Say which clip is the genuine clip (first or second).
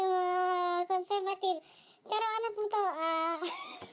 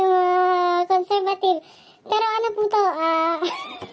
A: second